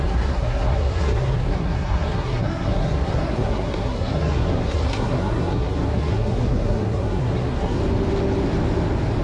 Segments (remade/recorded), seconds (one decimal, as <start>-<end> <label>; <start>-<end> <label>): 0.0-7.8 remade; 7.8-9.2 recorded